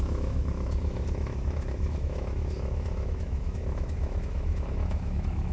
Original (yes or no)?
no